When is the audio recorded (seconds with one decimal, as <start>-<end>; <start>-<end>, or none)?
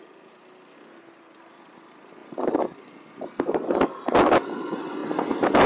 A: 0.0-5.7